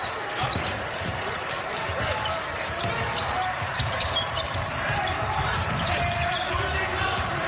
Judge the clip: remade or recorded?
remade